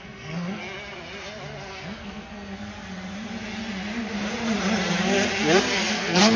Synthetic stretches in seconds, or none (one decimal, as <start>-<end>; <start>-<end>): 0.0-0.6; 1.7-2.7; 5.9-6.4